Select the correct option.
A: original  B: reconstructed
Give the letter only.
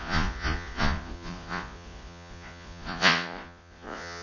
B